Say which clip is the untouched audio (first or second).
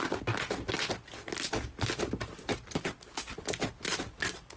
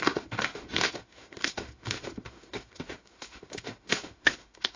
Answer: first